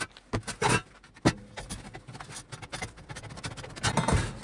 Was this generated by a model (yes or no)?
no